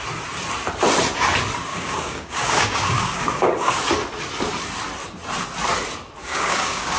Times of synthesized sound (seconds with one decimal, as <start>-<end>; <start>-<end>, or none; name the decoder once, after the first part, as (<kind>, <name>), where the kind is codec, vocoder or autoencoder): 1.7-3.7 (codec, DAC); 6.2-7.0